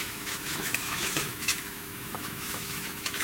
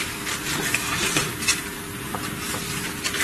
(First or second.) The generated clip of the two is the first